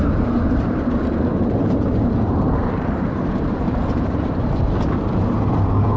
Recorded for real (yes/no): no